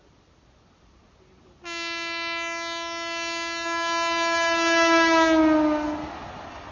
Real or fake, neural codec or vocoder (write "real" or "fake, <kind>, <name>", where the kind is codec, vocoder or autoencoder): real